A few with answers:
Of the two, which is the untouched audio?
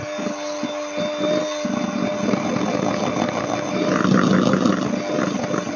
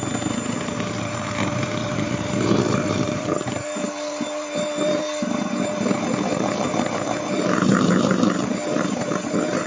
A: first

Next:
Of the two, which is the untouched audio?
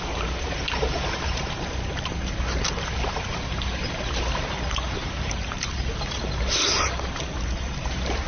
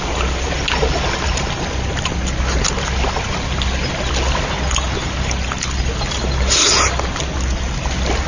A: second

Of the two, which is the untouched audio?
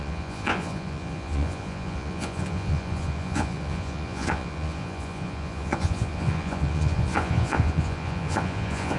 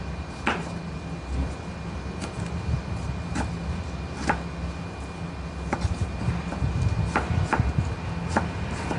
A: second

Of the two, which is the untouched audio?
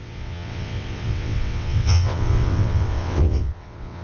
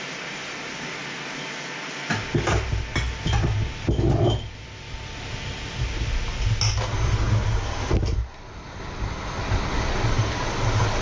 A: second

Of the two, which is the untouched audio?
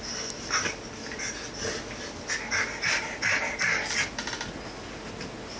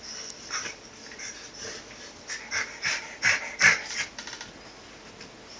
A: first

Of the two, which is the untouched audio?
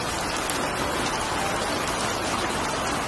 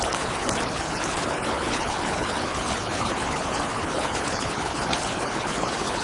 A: first